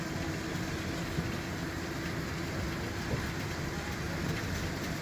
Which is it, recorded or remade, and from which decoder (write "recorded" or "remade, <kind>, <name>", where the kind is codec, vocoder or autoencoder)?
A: recorded